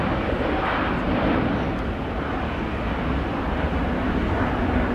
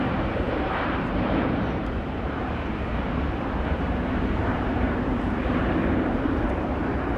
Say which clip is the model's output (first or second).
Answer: second